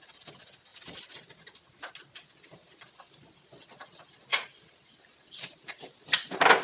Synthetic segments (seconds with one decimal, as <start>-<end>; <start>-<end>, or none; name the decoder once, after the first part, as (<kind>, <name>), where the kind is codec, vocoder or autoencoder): none